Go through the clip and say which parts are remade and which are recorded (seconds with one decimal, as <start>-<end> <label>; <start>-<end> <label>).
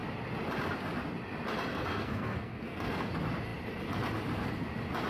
0.0-1.7 recorded; 1.7-3.1 remade; 3.1-5.1 recorded